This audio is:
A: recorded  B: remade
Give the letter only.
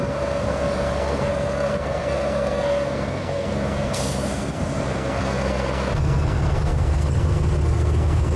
B